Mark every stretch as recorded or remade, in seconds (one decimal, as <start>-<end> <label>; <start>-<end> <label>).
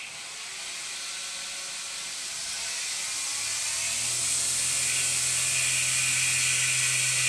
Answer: 0.0-7.3 recorded